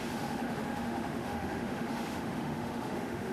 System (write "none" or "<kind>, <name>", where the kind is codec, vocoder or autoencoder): autoencoder, DAC-VAE